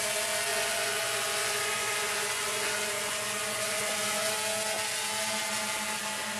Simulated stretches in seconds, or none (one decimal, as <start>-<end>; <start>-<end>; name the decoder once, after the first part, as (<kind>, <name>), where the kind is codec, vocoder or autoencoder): 0.5-4.3 (vocoder, Vocos)